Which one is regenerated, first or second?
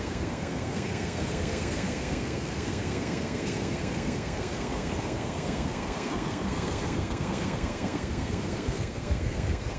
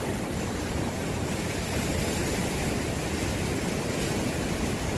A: first